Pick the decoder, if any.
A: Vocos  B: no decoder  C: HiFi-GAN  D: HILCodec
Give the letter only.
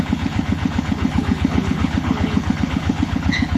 D